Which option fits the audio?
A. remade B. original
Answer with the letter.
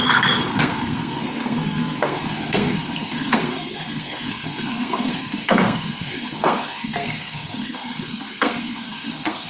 A